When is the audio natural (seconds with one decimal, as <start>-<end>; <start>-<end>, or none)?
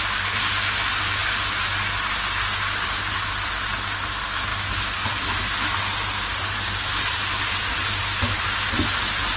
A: 0.0-9.4